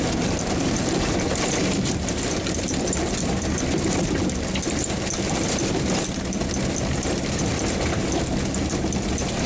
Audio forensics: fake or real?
real